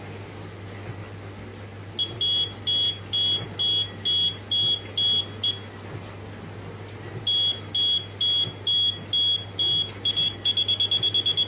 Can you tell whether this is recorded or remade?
recorded